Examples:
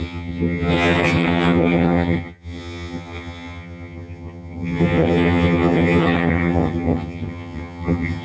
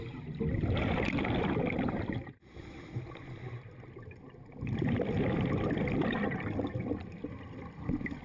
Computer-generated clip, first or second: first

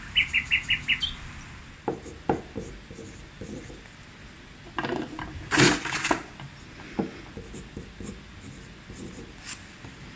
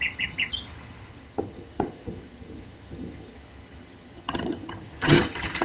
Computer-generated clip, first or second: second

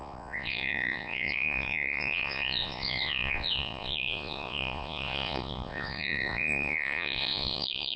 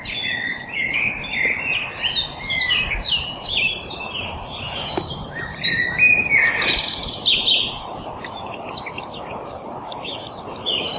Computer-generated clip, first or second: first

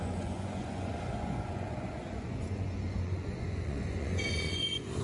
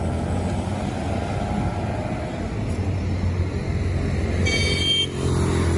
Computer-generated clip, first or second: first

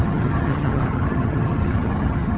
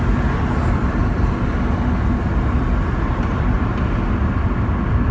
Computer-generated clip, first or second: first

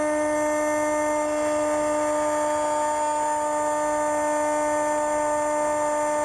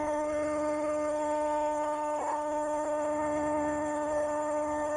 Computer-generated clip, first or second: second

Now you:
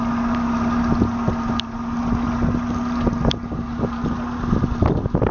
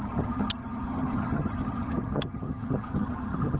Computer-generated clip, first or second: second